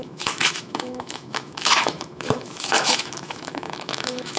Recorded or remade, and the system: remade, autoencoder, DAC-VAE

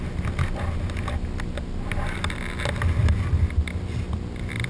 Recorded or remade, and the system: recorded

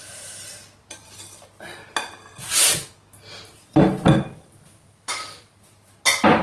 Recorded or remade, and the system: recorded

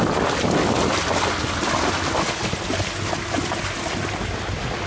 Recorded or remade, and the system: recorded